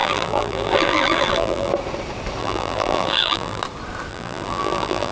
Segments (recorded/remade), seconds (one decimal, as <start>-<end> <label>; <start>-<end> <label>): 0.0-1.7 remade; 1.7-2.4 recorded; 2.4-3.6 remade; 3.6-4.1 recorded; 4.1-5.1 remade